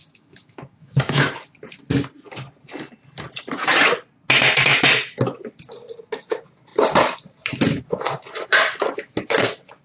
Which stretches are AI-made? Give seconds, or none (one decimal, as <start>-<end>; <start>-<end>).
0.0-1.3